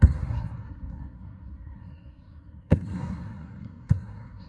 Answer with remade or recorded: remade